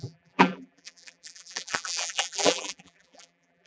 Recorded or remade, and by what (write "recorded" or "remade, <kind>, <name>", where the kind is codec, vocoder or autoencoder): remade, vocoder, BigVGAN v2